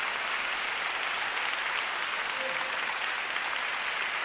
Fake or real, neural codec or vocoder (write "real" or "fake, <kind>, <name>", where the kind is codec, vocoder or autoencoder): real